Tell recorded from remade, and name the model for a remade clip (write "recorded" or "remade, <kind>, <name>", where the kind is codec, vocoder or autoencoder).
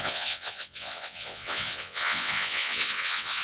remade, vocoder, WaveNeXt